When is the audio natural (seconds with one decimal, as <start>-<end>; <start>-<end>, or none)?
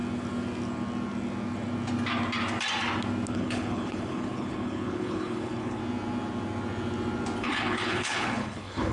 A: 0.0-3.3; 5.8-7.4